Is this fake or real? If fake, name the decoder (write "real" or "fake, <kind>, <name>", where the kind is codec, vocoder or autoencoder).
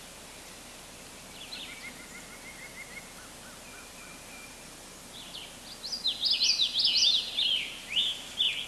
real